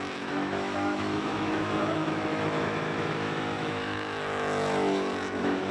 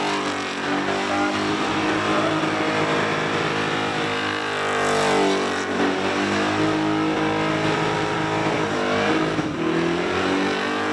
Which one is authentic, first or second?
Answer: second